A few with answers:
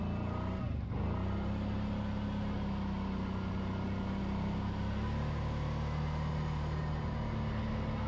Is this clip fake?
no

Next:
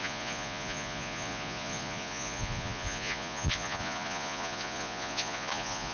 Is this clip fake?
yes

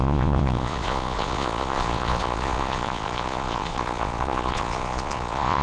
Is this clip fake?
yes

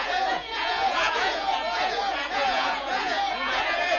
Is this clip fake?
yes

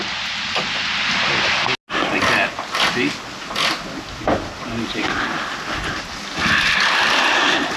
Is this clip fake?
no